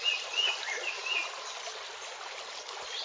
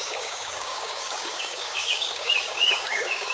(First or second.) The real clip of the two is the first